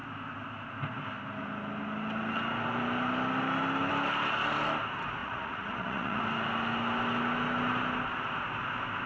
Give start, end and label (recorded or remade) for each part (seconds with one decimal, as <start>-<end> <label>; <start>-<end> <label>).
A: 0.0-5.2 recorded; 5.2-6.2 remade; 6.2-9.1 recorded